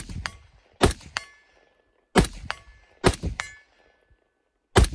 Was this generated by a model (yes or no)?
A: no